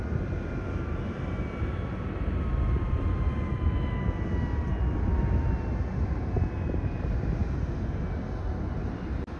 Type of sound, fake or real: real